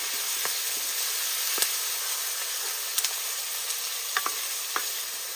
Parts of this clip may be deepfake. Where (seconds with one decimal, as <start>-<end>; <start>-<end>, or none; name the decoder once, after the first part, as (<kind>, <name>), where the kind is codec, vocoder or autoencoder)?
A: 2.9-3.5 (vocoder, BigVGAN v2)